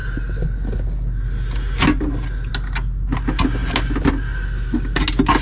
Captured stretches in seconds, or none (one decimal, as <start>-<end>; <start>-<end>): 0.0-5.4